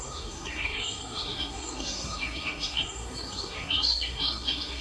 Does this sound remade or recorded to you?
remade